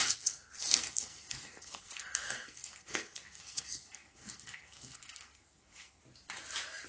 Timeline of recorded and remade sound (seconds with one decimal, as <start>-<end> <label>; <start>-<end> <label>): 0.0-6.0 remade; 6.0-6.9 recorded